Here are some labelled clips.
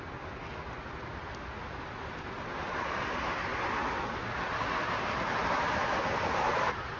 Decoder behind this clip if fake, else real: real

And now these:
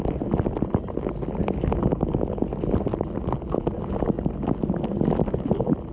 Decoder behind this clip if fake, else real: real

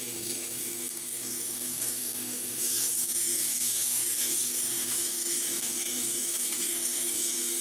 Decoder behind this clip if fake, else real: fake, codec, DAC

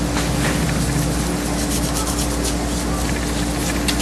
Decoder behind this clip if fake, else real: real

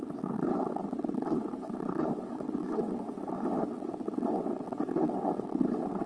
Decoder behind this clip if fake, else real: fake, vocoder, WaveNeXt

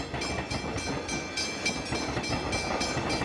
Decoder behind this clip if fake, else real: real